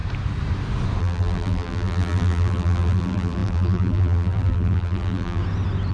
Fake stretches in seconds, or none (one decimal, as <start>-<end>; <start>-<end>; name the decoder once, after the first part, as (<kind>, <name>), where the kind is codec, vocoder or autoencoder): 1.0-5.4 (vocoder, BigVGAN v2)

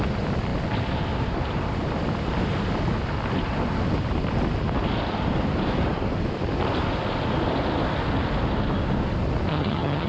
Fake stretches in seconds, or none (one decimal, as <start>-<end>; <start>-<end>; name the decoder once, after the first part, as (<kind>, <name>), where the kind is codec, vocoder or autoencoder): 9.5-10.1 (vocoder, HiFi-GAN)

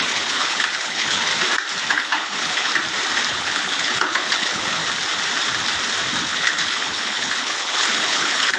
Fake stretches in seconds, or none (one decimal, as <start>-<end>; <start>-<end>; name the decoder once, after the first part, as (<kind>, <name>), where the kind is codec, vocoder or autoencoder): 0.0-1.3 (codec, HILCodec); 1.9-2.7; 3.3-4.8; 6.2-8.6